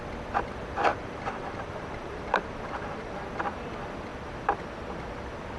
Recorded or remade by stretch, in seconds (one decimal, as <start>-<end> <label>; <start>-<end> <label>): 0.0-0.9 recorded; 0.9-3.2 remade; 3.2-5.6 recorded